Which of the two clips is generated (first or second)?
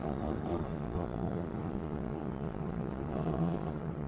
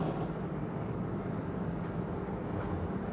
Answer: first